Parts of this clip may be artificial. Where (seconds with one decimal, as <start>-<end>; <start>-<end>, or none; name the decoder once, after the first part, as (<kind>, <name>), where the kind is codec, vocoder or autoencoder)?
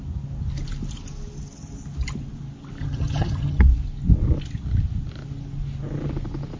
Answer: 2.8-3.6 (vocoder, HiFi-GAN)